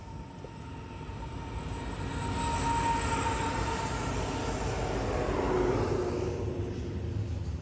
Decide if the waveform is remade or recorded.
recorded